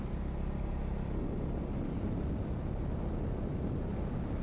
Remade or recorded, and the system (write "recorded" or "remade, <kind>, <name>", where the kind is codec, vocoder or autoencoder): recorded